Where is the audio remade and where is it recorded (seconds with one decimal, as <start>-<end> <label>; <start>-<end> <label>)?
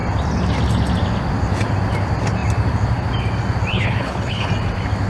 0.0-3.7 recorded; 3.7-4.5 remade; 4.5-5.1 recorded